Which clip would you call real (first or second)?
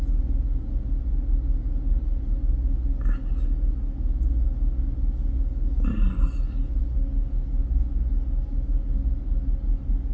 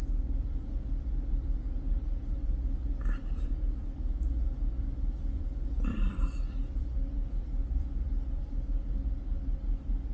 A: first